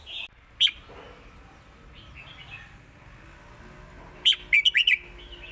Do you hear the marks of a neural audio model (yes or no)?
no